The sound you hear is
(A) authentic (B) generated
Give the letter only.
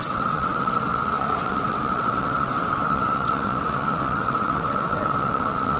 B